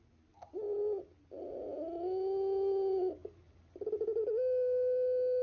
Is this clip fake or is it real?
real